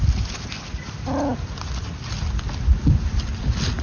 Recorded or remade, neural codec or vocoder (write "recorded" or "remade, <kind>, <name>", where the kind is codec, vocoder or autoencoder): recorded